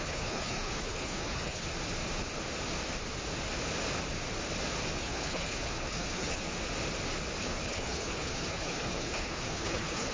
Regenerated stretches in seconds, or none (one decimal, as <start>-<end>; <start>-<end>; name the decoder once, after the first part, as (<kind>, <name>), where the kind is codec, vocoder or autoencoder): 0.0-1.7 (codec, HILCodec); 5.0-6.4; 7.4-10.1